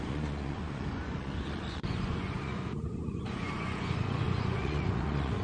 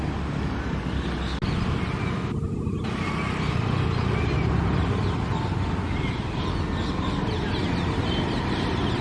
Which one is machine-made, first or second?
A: first